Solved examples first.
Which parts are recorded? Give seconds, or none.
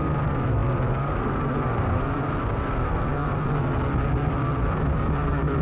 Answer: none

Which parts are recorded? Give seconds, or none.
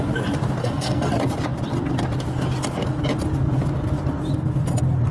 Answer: 0.0-0.6; 1.1-5.1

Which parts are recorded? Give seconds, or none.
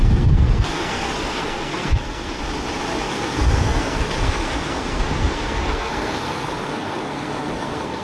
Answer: 2.4-3.0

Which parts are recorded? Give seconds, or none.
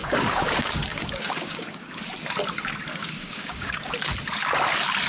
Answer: 2.0-2.9; 3.9-5.1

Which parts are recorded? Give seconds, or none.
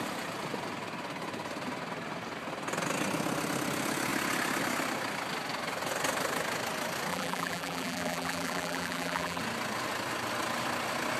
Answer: 0.0-7.1; 9.4-11.2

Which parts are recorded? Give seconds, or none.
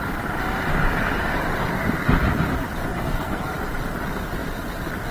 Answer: 0.0-2.9; 3.4-5.1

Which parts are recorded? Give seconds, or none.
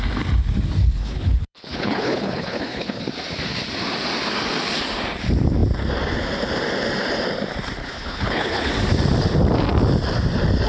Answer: 0.0-0.8; 3.0-7.8; 8.7-10.7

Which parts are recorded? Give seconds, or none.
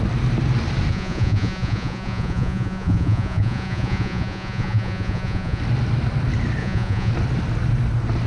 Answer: 0.0-0.9; 5.6-6.6; 7.1-8.3